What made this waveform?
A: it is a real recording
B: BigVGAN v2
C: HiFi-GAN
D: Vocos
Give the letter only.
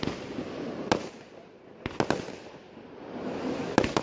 A